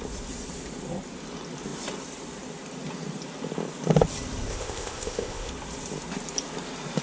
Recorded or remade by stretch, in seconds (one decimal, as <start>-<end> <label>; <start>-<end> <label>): 0.0-4.5 recorded; 4.5-5.5 remade; 5.5-7.0 recorded